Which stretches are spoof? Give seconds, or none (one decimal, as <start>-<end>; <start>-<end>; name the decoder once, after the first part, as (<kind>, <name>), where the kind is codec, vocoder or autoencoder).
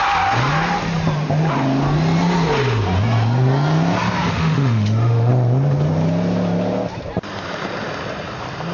4.3-5.3 (autoencoder, DAC-VAE)